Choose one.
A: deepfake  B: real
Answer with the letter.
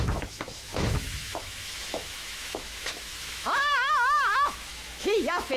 A